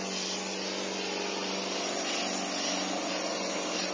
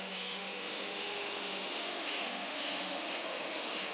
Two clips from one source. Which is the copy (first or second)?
second